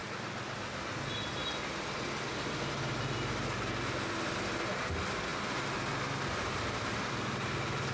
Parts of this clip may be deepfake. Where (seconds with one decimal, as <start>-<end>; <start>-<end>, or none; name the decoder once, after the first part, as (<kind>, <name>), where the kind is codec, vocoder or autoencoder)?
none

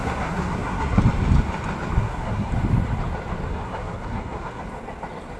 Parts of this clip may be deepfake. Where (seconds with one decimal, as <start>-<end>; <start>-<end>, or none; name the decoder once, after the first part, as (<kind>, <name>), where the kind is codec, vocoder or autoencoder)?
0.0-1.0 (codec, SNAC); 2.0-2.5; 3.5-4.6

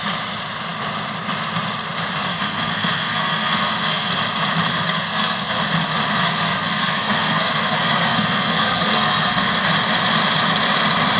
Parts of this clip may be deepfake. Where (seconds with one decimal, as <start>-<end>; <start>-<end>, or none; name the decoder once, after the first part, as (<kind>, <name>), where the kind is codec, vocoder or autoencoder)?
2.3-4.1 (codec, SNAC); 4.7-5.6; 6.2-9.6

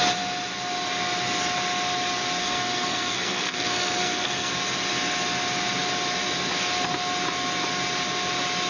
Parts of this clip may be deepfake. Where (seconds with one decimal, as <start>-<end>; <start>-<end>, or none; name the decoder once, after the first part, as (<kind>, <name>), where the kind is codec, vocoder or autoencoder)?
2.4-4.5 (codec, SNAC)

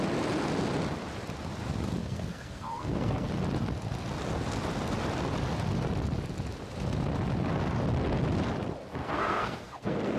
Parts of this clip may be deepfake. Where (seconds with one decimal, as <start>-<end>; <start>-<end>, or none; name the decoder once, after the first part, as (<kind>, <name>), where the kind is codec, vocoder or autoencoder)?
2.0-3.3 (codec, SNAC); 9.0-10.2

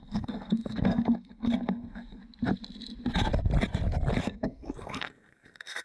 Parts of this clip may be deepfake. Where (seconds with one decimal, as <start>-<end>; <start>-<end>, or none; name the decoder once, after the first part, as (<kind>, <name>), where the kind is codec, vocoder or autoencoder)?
0.0-2.2 (codec, SNAC); 4.2-5.8